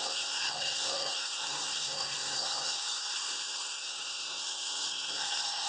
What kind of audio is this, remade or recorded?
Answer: remade